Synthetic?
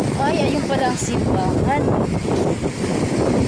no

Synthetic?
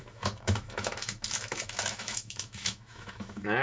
yes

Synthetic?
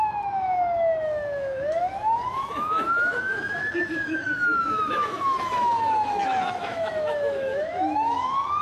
yes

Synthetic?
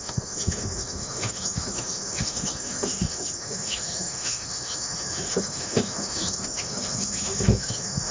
yes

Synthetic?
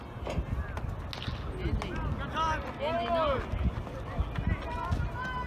no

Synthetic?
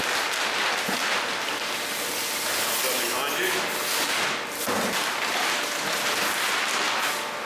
no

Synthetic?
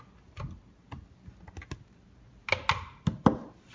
no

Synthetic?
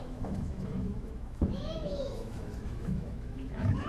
yes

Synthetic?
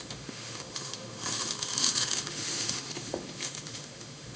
yes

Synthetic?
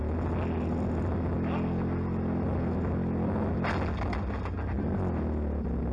no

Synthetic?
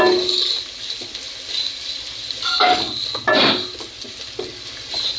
no